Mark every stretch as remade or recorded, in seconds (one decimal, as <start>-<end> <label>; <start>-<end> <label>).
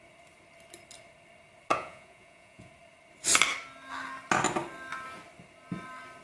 0.0-1.7 recorded; 1.7-2.7 remade; 2.7-6.2 recorded